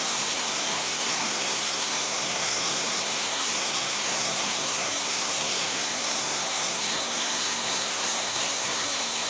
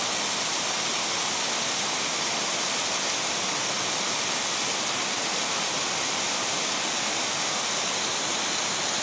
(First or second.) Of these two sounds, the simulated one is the first